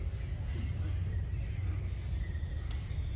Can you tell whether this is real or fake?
real